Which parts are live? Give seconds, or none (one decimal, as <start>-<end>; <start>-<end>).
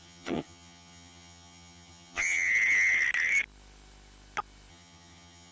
2.5-4.7